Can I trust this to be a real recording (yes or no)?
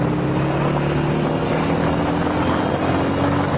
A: yes